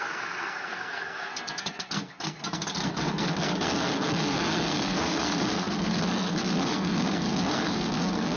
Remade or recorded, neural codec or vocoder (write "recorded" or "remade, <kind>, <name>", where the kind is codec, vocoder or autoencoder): remade, codec, SNAC